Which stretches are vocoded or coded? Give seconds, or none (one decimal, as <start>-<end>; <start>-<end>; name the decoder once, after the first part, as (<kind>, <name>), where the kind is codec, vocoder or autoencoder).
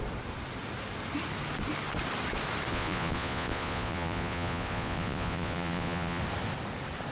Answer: 2.7-6.2 (vocoder, Vocos)